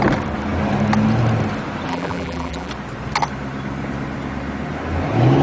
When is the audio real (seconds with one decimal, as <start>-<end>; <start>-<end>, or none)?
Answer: 0.0-1.9; 2.7-5.4